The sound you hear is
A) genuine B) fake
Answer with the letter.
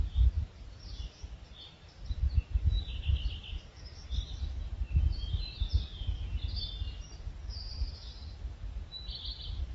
A